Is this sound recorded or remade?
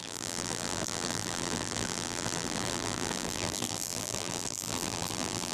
remade